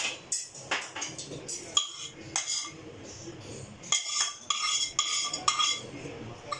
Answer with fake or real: real